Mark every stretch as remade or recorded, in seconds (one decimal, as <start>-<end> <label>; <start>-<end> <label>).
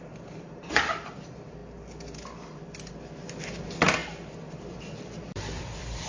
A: 0.0-1.6 remade; 1.6-2.9 recorded; 2.9-4.0 remade; 4.0-4.6 recorded; 4.6-6.1 remade